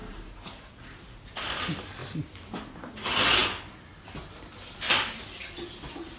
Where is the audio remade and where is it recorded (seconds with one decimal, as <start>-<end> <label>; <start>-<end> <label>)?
0.0-1.6 remade; 1.6-2.0 recorded; 2.0-2.8 remade; 2.8-6.2 recorded